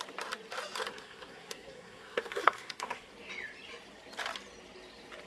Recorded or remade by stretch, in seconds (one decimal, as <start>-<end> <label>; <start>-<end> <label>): 0.0-0.9 recorded; 0.9-3.1 remade; 3.1-5.3 recorded